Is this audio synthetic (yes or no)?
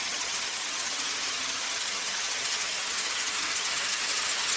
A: yes